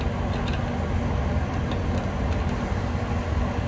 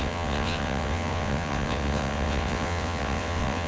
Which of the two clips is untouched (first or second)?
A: first